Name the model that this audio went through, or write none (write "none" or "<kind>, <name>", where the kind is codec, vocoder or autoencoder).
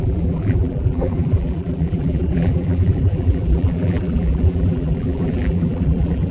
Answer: vocoder, BigVGAN v2